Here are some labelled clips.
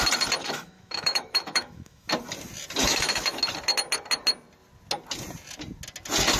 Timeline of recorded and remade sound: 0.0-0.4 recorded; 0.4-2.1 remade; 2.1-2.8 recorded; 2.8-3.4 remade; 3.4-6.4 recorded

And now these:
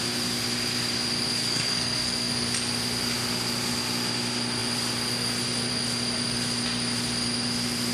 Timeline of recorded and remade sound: 0.0-1.4 recorded; 1.4-2.3 remade; 2.3-7.9 recorded

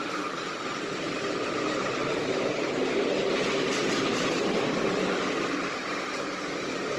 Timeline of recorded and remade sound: 0.0-7.0 recorded

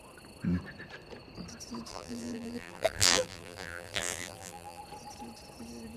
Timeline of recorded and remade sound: 0.0-1.9 recorded; 1.9-4.8 remade; 4.8-6.0 recorded

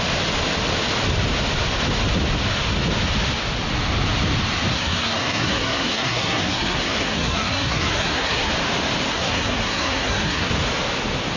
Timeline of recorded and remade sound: 0.0-4.7 recorded; 4.7-8.5 remade; 8.5-9.1 recorded; 9.1-10.5 remade; 10.5-11.4 recorded

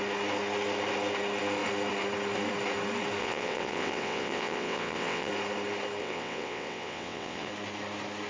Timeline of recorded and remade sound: 0.0-3.2 recorded; 3.2-5.3 remade; 5.3-6.0 recorded; 6.0-7.5 remade; 7.5-8.3 recorded

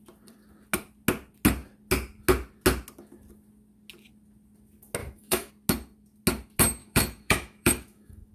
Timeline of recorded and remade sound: 0.0-5.0 recorded; 5.0-5.5 remade; 5.5-6.8 recorded; 6.8-8.3 remade

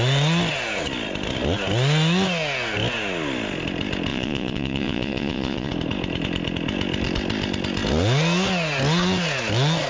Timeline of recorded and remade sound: 0.0-4.1 recorded; 4.1-5.7 remade; 5.7-9.9 recorded